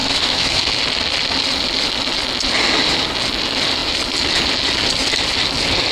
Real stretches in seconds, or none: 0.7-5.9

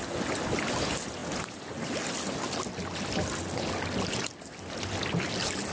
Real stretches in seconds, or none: 0.0-5.7

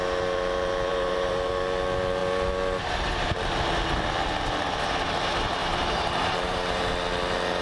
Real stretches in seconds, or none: 0.0-0.9; 1.5-5.6; 6.9-7.6

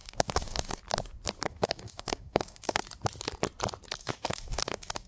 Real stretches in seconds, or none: 0.8-1.5; 2.8-4.0